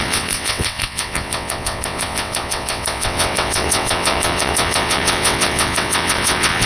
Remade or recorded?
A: remade